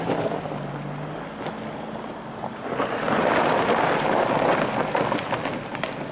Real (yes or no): yes